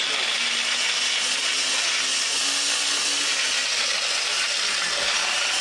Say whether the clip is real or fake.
real